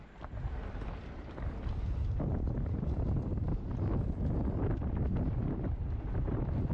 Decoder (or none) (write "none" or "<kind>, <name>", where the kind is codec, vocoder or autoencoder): none